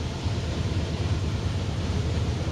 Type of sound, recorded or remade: remade